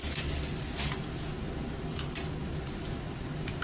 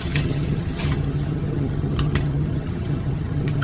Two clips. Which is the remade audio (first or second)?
second